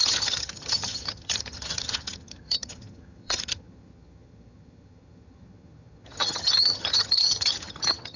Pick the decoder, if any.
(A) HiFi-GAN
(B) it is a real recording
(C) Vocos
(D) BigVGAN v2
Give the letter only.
A